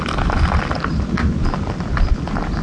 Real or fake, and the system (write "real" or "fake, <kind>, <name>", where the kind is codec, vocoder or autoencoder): real